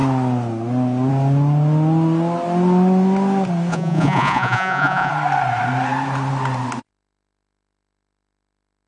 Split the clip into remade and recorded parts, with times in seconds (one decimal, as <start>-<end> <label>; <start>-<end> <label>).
0.0-3.7 recorded; 3.7-5.1 remade; 5.1-8.9 recorded

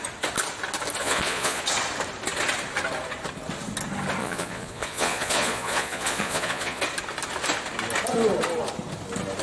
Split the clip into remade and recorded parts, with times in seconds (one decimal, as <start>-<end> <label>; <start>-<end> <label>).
0.0-1.0 recorded; 1.0-1.6 remade; 1.6-4.2 recorded; 4.2-6.8 remade; 6.8-9.4 recorded

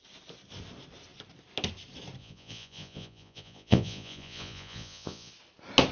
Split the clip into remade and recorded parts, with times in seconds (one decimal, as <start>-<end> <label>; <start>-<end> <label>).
0.0-2.2 recorded; 2.2-5.3 remade; 5.3-5.9 recorded

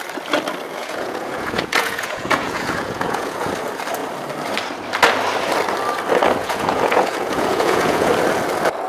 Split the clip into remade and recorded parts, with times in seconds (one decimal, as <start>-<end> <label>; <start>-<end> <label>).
0.0-0.8 recorded; 0.8-3.5 remade; 3.5-6.4 recorded; 6.4-8.1 remade; 8.1-8.9 recorded

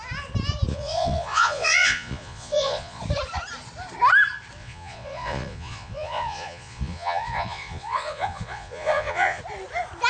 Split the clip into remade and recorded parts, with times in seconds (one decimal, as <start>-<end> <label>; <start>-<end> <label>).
0.0-0.7 recorded; 0.7-3.0 remade; 3.0-4.6 recorded; 4.6-9.4 remade; 9.4-10.1 recorded